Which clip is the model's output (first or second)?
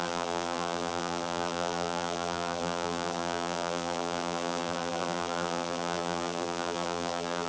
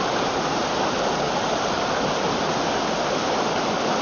first